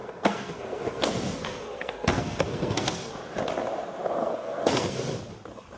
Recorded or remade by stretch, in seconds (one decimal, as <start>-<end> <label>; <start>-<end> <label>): 0.0-3.1 remade; 3.1-4.2 recorded; 4.2-5.2 remade; 5.2-5.8 recorded